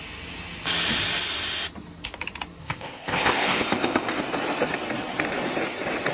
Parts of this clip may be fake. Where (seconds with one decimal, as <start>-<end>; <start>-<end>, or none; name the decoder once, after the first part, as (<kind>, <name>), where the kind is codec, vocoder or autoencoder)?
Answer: 2.6-4.2 (codec, ZipCodec)